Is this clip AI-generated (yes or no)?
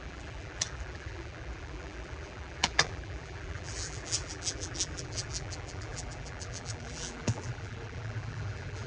yes